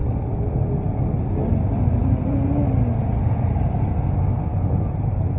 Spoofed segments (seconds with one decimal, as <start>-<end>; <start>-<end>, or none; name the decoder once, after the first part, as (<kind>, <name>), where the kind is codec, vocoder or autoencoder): 2.0-2.7 (vocoder, BigVGAN v2)